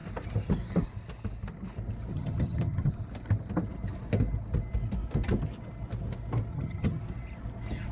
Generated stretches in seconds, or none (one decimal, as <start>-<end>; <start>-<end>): 2.1-2.9; 6.5-7.0